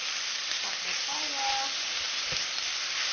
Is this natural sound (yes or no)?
yes